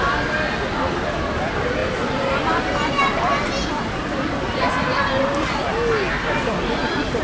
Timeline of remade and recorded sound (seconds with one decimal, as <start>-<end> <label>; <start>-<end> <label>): 0.0-7.2 recorded